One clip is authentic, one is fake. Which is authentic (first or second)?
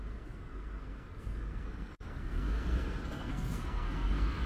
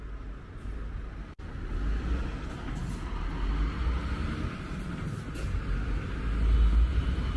second